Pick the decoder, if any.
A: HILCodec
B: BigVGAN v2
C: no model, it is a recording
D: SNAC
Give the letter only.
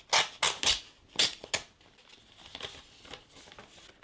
C